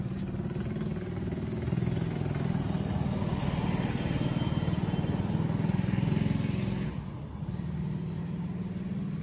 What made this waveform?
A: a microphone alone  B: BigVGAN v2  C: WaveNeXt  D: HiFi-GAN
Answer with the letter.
A